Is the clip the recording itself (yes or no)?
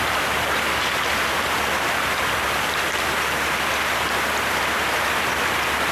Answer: yes